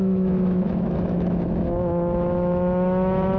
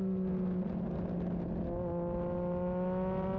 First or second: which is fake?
first